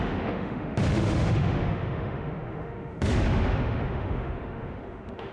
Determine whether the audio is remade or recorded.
remade